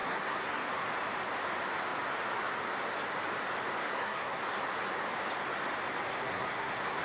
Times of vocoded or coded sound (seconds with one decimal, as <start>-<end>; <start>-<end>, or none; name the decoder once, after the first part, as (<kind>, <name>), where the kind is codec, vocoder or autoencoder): 0.0-0.9 (codec, SNAC); 3.8-4.5; 6.1-7.0